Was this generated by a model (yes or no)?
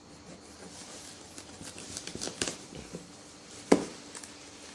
no